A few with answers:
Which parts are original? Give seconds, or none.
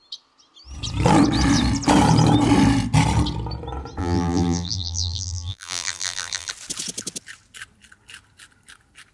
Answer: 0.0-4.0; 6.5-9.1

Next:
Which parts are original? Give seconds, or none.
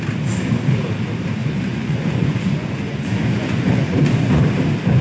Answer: 0.0-1.4; 4.4-5.0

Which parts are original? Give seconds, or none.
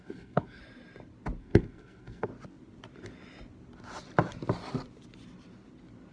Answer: 0.6-1.4; 2.3-6.1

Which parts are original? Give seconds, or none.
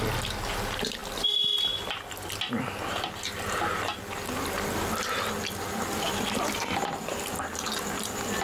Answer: 0.0-8.4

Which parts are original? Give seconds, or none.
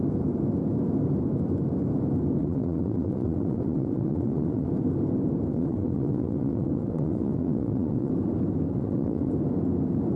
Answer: 0.0-2.4; 4.7-5.5; 8.1-8.7; 9.3-10.2